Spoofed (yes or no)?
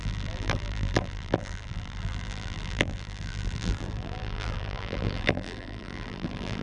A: yes